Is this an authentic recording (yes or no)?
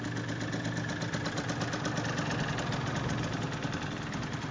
yes